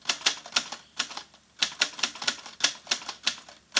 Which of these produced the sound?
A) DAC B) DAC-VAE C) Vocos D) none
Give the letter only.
D